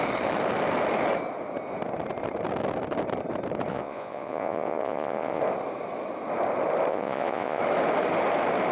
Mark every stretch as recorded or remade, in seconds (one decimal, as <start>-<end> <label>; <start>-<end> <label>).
0.0-3.7 recorded; 3.7-5.4 remade; 5.4-6.9 recorded; 6.9-7.6 remade; 7.6-8.7 recorded